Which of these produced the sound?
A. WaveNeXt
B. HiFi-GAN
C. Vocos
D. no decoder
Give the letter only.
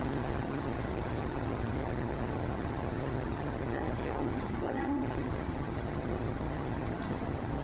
B